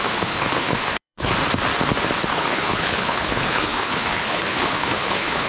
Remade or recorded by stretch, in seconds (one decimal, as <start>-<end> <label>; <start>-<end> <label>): 0.0-1.3 remade; 1.3-2.3 recorded; 2.3-5.5 remade

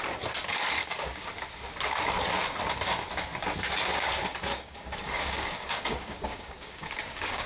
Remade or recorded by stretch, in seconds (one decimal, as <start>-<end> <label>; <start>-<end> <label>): 0.0-0.8 recorded; 0.8-1.3 remade; 1.3-4.5 recorded; 4.5-7.5 remade

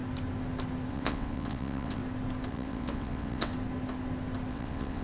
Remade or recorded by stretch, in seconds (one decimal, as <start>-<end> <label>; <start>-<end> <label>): 0.0-0.9 recorded; 0.9-2.0 remade; 2.0-2.5 recorded; 2.5-3.5 remade; 3.5-4.5 recorded; 4.5-5.0 remade

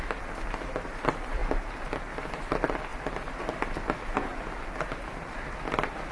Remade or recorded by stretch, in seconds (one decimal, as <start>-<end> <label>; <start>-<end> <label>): 0.0-6.1 recorded

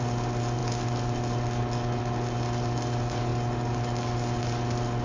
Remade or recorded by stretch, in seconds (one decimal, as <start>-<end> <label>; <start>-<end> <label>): 0.0-5.0 recorded

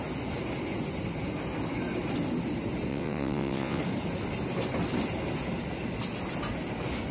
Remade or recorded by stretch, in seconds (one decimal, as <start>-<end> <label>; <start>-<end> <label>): 0.0-2.9 recorded; 2.9-3.8 remade; 3.8-7.1 recorded

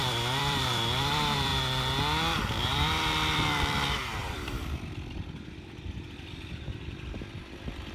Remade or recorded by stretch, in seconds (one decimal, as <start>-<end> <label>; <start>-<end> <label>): 0.0-1.5 remade; 1.5-2.6 recorded; 2.6-7.9 remade

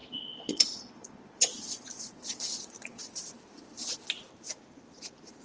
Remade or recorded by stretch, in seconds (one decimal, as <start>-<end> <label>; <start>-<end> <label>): 0.0-3.2 remade; 3.2-5.4 recorded